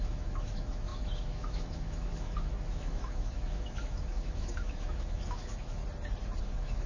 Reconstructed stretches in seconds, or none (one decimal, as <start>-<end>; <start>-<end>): 0.0-5.8; 6.4-6.9